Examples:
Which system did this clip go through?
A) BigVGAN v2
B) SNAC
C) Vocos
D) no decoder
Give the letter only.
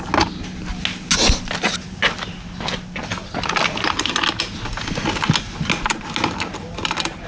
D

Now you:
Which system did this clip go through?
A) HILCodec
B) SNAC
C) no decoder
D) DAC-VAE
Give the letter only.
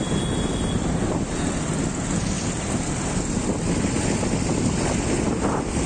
C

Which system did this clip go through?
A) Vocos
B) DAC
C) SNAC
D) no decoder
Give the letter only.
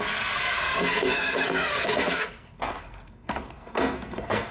C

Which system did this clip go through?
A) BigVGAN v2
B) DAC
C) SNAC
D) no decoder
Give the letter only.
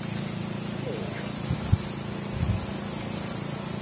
D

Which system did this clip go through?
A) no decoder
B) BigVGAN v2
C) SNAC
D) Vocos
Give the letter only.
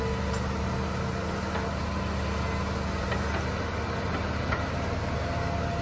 A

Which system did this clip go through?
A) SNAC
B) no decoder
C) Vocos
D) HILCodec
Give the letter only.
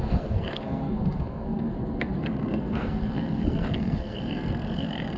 A